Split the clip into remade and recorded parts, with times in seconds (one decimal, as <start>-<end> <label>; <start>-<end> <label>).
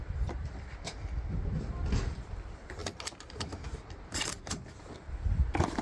0.0-2.8 remade; 2.8-4.4 recorded; 4.4-5.8 remade